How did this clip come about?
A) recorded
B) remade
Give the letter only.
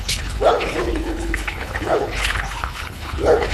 B